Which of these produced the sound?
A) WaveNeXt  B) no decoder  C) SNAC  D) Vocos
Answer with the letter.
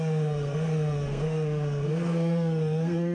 C